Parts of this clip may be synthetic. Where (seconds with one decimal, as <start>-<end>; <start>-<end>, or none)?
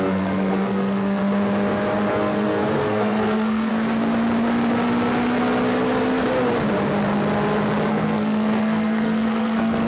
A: 0.0-1.2; 2.1-3.7; 7.9-9.9